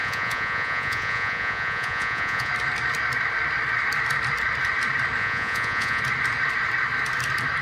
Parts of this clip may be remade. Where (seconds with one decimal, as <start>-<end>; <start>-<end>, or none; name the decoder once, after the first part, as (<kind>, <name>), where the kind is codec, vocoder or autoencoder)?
0.0-2.5 (vocoder, Vocos); 5.2-6.0